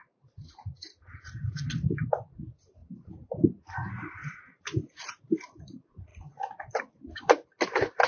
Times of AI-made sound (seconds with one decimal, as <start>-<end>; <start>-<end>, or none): 0.0-1.7; 2.8-3.4; 4.2-4.8